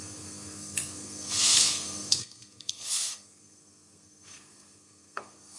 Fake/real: fake